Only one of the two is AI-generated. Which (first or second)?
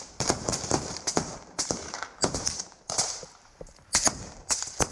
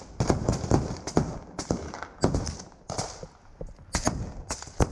first